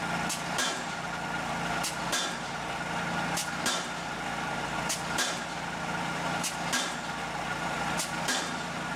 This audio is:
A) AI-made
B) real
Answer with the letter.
B